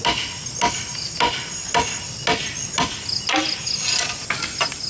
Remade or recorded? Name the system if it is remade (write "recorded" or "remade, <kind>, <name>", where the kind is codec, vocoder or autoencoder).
recorded